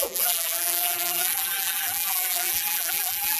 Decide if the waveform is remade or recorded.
remade